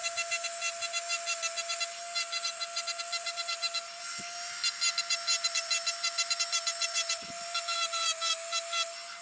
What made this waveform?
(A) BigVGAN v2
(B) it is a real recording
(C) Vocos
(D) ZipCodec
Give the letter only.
B